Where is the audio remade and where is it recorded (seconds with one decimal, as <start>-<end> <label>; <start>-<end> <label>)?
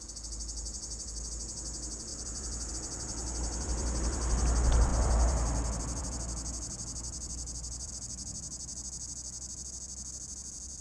0.0-2.1 recorded; 2.1-2.7 remade; 2.7-3.2 recorded; 3.2-4.3 remade; 4.3-4.9 recorded; 4.9-7.9 remade; 7.9-10.8 recorded